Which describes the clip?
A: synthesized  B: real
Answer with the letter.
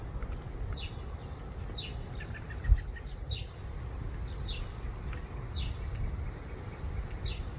B